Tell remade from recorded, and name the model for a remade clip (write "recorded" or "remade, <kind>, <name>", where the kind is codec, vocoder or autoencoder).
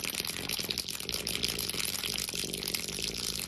recorded